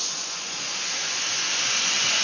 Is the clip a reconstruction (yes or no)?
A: yes